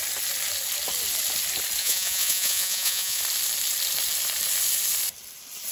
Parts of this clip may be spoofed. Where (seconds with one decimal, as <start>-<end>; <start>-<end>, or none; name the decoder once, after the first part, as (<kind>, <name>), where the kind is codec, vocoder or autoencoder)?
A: 1.8-3.2 (vocoder, Vocos)